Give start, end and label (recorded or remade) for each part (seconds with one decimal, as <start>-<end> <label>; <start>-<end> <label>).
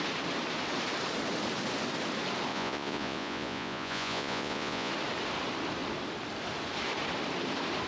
0.0-2.5 recorded; 2.5-4.9 remade; 4.9-7.9 recorded